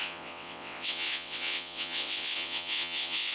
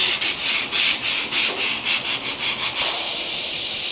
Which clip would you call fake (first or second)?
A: first